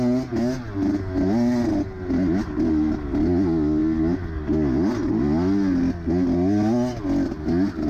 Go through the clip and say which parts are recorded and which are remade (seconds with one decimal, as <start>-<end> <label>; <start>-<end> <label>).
0.0-7.9 recorded